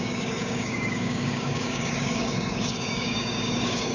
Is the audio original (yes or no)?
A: no